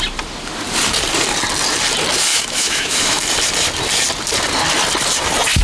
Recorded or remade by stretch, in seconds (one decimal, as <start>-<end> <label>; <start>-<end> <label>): 0.0-2.3 recorded; 2.3-3.2 remade; 3.2-5.6 recorded